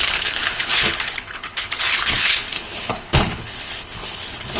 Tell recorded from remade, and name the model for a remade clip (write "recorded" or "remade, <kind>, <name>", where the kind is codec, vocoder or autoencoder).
remade, codec, HILCodec